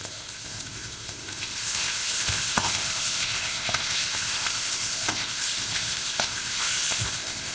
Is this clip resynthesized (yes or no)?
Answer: yes